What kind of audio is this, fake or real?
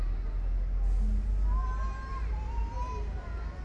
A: real